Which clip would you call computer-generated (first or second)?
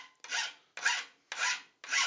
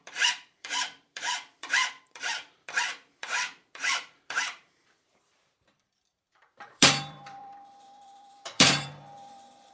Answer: second